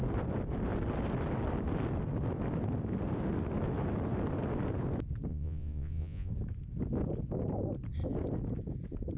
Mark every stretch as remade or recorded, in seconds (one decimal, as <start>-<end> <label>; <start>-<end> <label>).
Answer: 0.0-5.3 recorded; 5.3-6.3 remade; 6.3-9.2 recorded